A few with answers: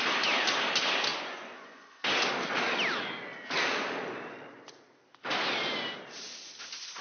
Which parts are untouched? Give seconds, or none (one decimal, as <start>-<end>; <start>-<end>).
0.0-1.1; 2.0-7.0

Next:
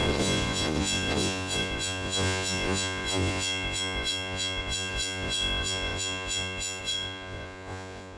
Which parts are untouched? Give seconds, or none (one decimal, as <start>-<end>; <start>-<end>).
none

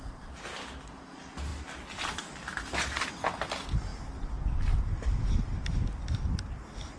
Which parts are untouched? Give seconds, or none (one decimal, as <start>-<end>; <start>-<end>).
0.0-7.0

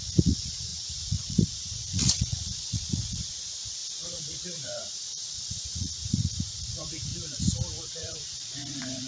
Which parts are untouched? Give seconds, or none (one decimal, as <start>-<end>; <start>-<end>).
7.1-7.8